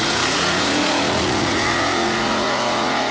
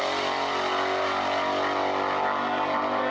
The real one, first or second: second